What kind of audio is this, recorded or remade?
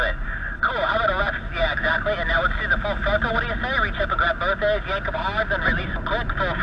recorded